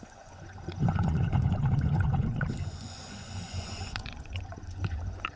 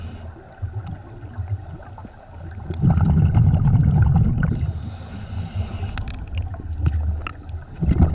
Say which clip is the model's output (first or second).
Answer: first